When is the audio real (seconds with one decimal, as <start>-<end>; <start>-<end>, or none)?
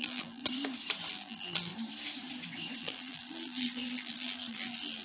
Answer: 0.4-1.1; 1.7-2.8